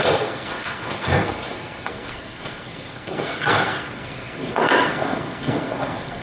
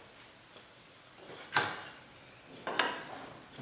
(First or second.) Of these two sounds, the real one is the second